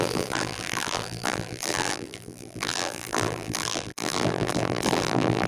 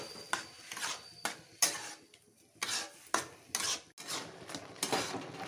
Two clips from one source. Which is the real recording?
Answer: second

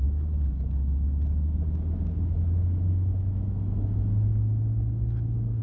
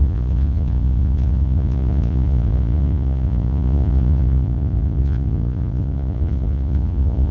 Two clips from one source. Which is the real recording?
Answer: first